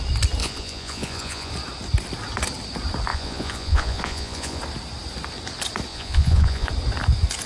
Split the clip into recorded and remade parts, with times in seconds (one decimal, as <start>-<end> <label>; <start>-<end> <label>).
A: 0.0-0.4 recorded; 0.4-1.5 remade; 1.5-3.1 recorded; 3.1-4.6 remade; 4.6-5.9 recorded; 5.9-6.7 remade; 6.7-7.5 recorded